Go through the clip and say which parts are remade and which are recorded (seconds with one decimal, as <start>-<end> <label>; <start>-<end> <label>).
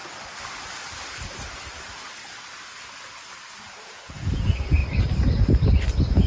0.0-3.8 recorded; 3.8-4.8 remade; 4.8-6.3 recorded